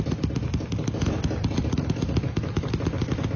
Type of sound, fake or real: real